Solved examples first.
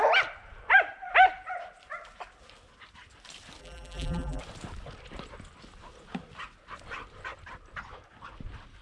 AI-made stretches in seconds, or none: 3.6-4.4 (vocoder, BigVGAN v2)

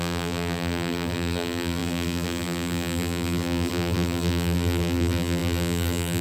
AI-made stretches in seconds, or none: 0.0-6.2 (vocoder, BigVGAN v2)